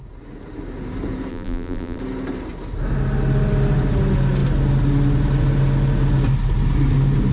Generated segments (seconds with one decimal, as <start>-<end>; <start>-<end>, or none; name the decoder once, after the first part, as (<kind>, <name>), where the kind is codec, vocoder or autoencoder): 1.3-2.0 (vocoder, BigVGAN v2)